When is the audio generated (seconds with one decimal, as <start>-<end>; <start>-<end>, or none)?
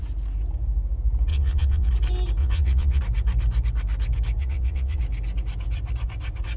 1.3-1.9; 2.4-3.0; 4.4-5.0